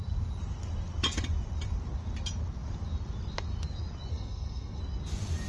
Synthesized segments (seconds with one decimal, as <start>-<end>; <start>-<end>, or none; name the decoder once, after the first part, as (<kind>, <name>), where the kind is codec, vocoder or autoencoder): 4.1-4.8 (codec, SNAC)